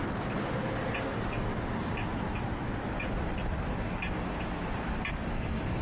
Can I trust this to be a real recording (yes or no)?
yes